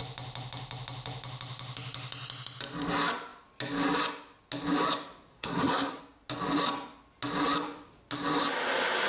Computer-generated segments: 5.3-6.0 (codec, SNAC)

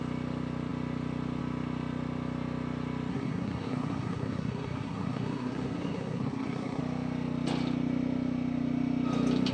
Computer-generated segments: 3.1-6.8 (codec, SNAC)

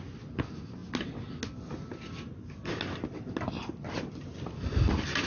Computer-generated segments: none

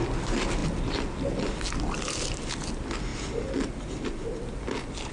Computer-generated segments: none

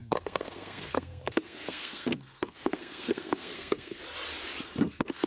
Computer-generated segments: 0.0-4.0 (codec, SNAC); 4.8-5.3

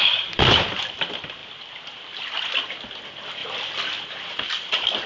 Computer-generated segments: 0.0-1.4 (vocoder, BigVGAN v2); 2.5-3.4; 4.4-5.1

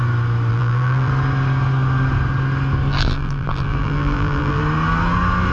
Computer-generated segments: 0.5-1.1 (vocoder, BigVGAN v2); 2.9-4.6